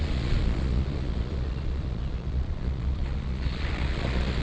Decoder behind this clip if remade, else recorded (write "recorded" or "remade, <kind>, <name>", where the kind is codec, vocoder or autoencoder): remade, vocoder, Vocos